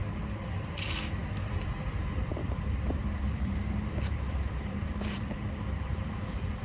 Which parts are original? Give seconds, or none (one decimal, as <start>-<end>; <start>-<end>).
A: 0.0-2.3